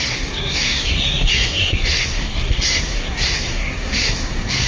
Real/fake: fake